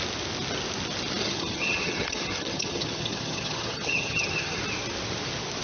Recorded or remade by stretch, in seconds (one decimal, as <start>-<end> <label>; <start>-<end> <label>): 0.0-1.2 recorded; 1.2-4.6 remade; 4.6-5.6 recorded